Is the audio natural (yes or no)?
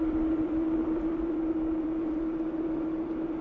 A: no